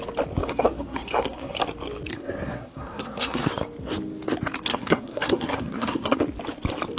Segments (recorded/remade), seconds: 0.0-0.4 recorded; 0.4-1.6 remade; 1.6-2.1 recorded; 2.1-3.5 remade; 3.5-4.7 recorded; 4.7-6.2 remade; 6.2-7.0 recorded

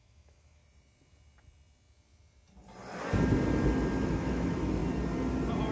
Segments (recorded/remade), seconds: 0.0-0.6 remade; 0.6-4.0 recorded; 4.0-4.8 remade; 4.8-5.7 recorded

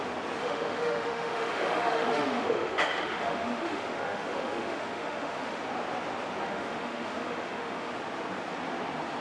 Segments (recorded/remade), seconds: 0.0-0.4 recorded; 0.4-5.6 remade; 5.6-6.4 recorded; 6.4-7.9 remade; 7.9-9.2 recorded

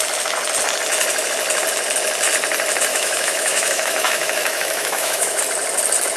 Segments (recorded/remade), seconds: 0.0-2.9 recorded; 2.9-5.4 remade; 5.4-6.2 recorded

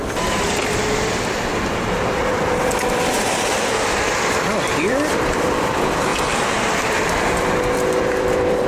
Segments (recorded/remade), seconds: 0.0-6.1 remade; 6.1-8.0 recorded; 8.0-8.7 remade

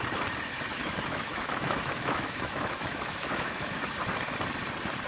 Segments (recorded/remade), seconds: 0.0-0.7 recorded; 0.7-3.8 remade; 3.8-5.1 recorded